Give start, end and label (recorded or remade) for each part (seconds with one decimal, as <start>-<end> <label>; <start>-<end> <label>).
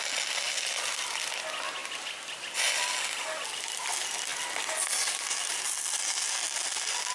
0.0-7.1 recorded